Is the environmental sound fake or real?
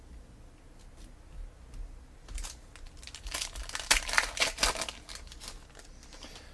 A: real